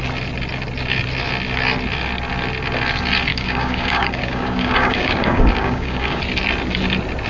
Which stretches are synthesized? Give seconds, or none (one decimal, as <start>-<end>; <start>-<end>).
3.3-6.2